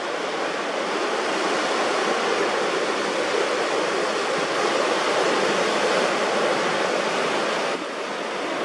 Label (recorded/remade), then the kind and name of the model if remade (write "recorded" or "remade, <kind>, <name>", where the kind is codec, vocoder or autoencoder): recorded